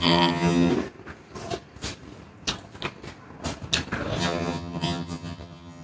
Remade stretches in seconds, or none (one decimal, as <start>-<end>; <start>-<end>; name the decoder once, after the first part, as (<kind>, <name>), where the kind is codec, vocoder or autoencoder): 0.0-0.7 (vocoder, HiFi-GAN); 4.2-5.8